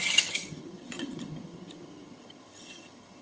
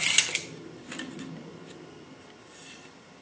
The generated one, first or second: first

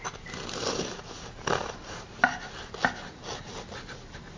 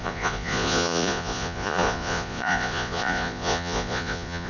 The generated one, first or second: second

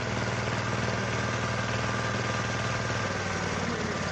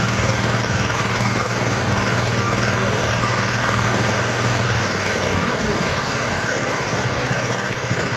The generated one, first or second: second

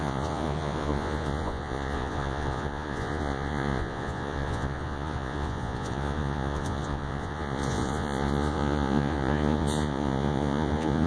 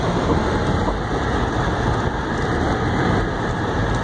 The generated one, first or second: first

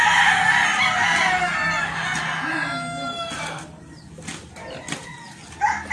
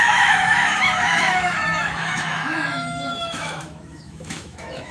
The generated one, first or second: second